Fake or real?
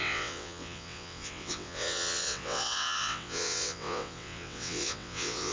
fake